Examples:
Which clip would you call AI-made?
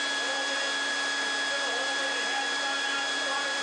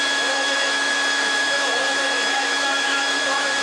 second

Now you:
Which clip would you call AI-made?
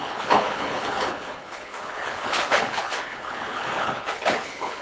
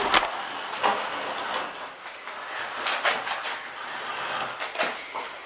first